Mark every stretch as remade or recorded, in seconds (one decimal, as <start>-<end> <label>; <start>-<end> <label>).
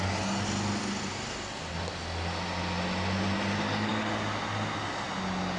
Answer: 0.0-5.6 recorded